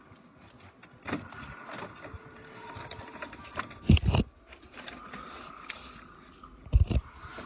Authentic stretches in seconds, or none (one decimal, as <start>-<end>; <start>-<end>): 0.0-7.5